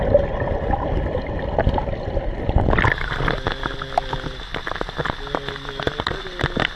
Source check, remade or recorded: recorded